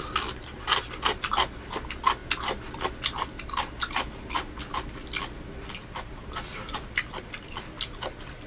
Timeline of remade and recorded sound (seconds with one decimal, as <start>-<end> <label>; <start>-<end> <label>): 0.0-8.5 recorded